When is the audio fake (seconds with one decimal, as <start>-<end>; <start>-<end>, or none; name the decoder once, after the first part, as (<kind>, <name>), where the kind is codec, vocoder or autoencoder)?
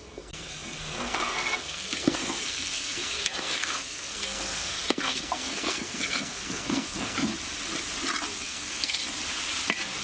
0.0-7.3 (codec, SNAC); 8.4-9.0